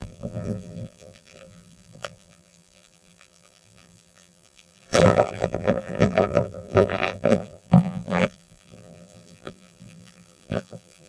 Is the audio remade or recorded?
remade